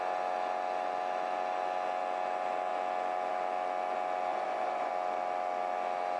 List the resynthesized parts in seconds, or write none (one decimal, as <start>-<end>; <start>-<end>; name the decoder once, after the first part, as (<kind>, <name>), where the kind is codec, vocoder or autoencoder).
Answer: 4.3-4.9 (vocoder, Vocos)